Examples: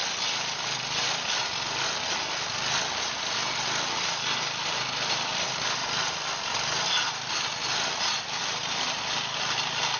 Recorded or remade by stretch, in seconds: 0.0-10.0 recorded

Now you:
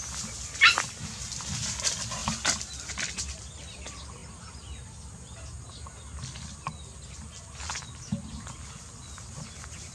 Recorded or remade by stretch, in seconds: 0.0-2.2 recorded; 2.2-3.4 remade; 3.4-9.9 recorded

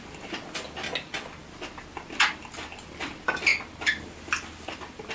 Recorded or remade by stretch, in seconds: 0.0-3.5 recorded; 3.5-5.1 remade

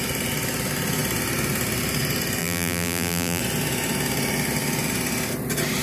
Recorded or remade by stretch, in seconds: 0.0-2.4 recorded; 2.4-3.4 remade; 3.4-5.8 recorded

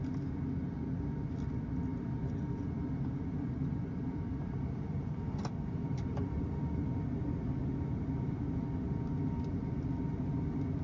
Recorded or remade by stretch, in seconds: 0.0-1.9 recorded; 1.9-6.8 remade; 6.8-10.8 recorded

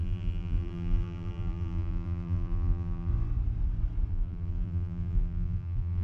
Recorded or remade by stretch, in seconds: 0.0-3.1 remade; 3.1-4.1 recorded; 4.1-6.0 remade

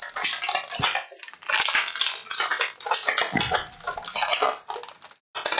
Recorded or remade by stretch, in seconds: 0.0-5.6 recorded

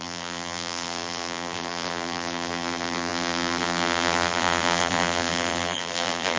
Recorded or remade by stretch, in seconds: 0.0-6.4 remade